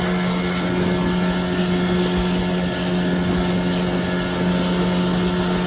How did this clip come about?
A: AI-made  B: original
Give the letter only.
B